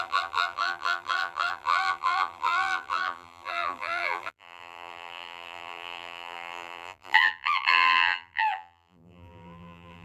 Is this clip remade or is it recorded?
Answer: remade